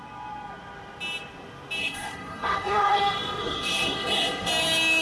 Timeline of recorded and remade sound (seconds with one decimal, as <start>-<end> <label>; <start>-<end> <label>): 0.0-1.8 recorded; 1.8-3.0 remade; 3.0-3.4 recorded; 3.4-4.5 remade; 4.5-5.0 recorded